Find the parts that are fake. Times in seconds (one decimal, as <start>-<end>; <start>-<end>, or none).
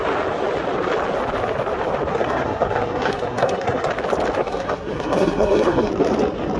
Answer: 2.1-3.9; 4.4-5.9